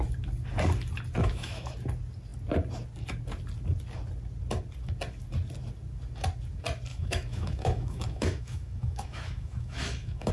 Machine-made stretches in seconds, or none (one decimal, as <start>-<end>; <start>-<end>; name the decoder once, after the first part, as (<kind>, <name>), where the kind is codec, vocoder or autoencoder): 1.2-1.7 (autoencoder, DAC-VAE); 6.9-10.3